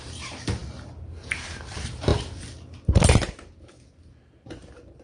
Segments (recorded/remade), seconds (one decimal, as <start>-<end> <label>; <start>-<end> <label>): 0.0-5.0 recorded